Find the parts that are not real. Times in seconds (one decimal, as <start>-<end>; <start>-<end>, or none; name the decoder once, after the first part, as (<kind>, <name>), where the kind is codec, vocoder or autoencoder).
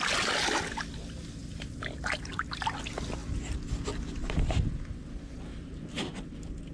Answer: 1.4-2.3 (vocoder, BigVGAN v2); 5.5-6.3